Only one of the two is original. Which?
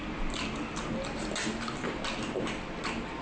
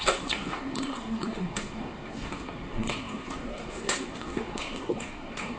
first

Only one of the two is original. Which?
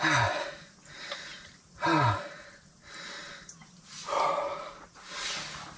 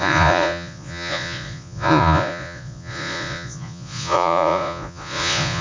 first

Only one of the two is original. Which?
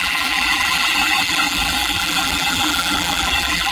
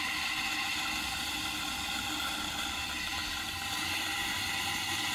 second